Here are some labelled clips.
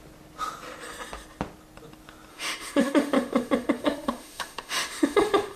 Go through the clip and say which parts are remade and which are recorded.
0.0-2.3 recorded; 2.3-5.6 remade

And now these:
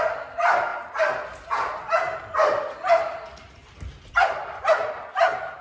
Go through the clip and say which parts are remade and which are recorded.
0.0-5.6 recorded

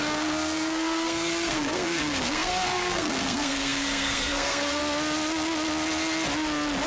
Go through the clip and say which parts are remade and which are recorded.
0.0-4.8 remade; 4.8-6.9 recorded

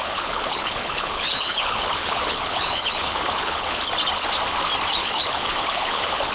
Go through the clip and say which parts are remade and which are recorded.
0.0-3.8 remade; 3.8-5.0 recorded; 5.0-6.3 remade

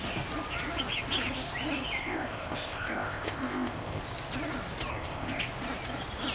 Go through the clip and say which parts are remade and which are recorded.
0.0-2.0 recorded; 2.0-4.0 remade; 4.0-4.9 recorded; 4.9-5.4 remade; 5.4-6.3 recorded

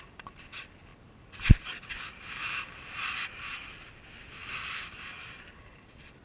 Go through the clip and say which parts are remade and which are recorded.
0.0-4.4 recorded; 4.4-4.9 remade; 4.9-6.2 recorded

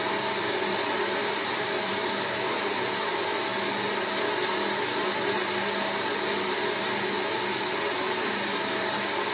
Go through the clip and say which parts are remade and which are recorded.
0.0-3.5 remade; 3.5-7.6 recorded; 7.6-9.3 remade